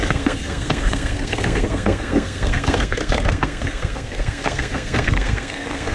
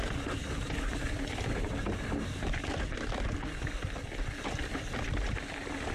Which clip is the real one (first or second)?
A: second